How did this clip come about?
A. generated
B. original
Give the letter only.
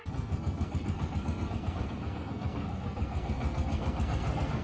A